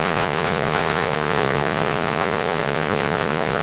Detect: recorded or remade remade